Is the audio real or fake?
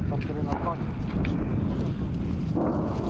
real